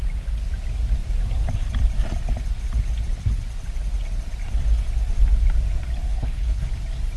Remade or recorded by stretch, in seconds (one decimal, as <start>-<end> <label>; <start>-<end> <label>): 0.0-6.1 recorded; 6.1-6.7 remade; 6.7-7.2 recorded